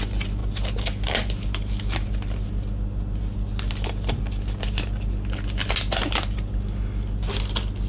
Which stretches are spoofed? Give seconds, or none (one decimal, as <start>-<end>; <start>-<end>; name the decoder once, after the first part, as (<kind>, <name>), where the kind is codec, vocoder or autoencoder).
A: none